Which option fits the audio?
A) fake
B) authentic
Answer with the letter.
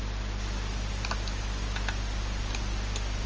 B